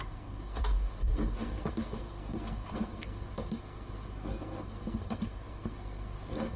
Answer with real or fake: fake